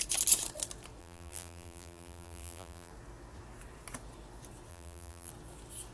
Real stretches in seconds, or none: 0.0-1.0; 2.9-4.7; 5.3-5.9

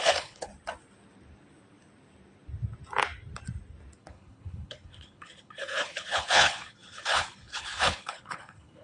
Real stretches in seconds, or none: 0.5-4.0

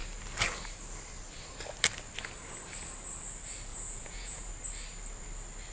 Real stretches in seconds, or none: 0.0-3.7; 4.5-5.7